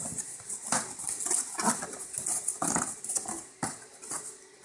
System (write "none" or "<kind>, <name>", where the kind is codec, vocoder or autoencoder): none